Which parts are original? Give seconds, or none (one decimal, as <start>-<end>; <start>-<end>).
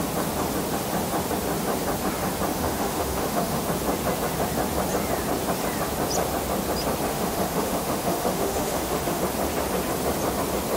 0.0-2.5; 3.6-7.1; 9.2-10.8